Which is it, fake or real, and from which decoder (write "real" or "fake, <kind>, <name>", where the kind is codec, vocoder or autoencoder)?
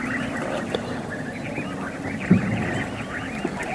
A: real